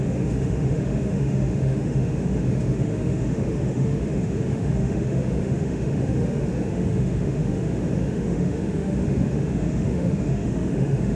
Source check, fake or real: fake